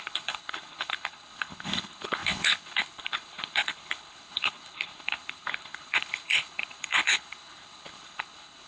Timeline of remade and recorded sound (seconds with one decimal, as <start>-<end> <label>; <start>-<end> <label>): 0.0-8.7 remade